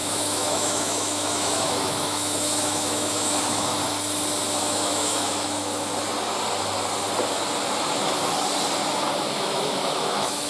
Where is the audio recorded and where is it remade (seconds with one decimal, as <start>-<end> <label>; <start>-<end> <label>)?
0.0-3.8 remade; 3.8-4.5 recorded; 4.5-5.9 remade; 5.9-9.2 recorded; 9.2-10.5 remade

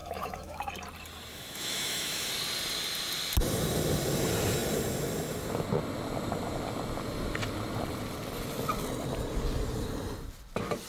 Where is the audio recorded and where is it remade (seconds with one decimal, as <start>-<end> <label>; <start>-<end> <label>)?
0.0-0.7 remade; 0.7-1.3 recorded; 1.3-2.3 remade; 2.3-10.9 recorded